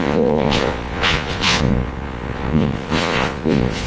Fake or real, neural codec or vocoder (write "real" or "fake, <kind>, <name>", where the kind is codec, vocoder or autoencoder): fake, vocoder, Vocos